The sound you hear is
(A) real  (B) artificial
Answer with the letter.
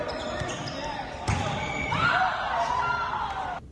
B